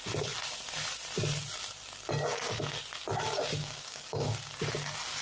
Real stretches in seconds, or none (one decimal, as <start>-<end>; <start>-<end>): 0.0-3.6; 4.4-5.2